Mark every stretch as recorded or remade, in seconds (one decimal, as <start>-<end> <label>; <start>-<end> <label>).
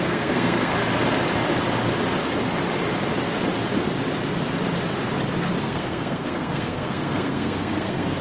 0.0-0.7 remade; 0.7-5.6 recorded; 5.6-8.2 remade